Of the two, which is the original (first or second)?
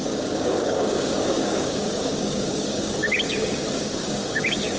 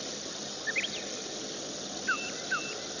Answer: second